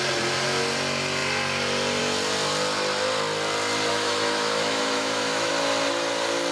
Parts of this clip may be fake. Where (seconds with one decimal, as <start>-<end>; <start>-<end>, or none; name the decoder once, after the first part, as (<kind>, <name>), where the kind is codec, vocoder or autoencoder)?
3.9-5.5 (autoencoder, DAC-VAE)